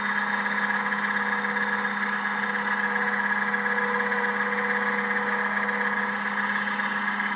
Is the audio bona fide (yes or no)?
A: yes